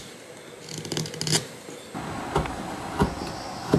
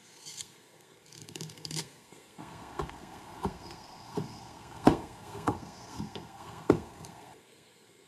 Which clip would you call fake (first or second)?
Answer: second